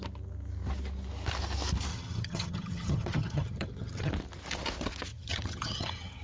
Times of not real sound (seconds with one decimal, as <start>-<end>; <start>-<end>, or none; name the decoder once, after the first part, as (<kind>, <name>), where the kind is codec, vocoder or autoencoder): 1.9-4.1 (vocoder, HiFi-GAN); 5.1-6.2